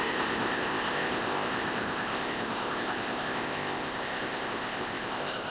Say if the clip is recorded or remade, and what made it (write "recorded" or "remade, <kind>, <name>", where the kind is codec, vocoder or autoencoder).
remade, codec, ZipCodec